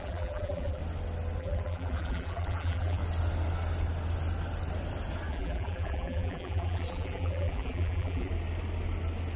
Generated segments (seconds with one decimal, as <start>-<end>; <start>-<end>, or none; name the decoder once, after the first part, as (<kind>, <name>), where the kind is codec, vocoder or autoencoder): 0.0-0.8 (vocoder, BigVGAN v2); 1.4-3.0; 5.3-8.3